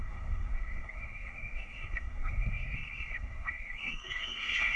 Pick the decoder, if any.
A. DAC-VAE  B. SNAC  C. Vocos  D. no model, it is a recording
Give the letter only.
B